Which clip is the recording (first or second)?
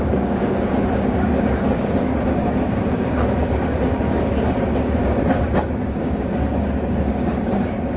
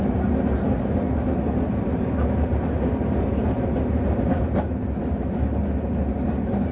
second